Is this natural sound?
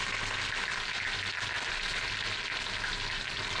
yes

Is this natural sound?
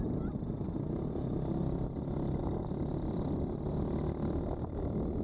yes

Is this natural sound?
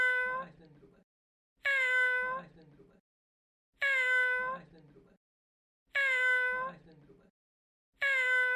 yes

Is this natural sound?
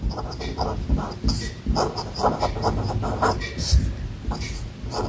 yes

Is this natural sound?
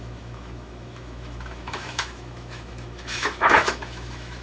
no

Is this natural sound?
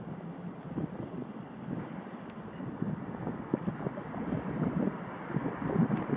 yes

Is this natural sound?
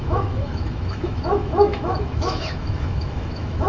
no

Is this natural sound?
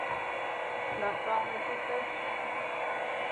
yes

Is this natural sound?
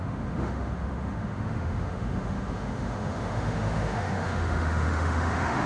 no